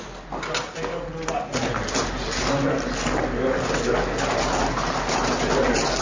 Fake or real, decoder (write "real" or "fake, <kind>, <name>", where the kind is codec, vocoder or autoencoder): real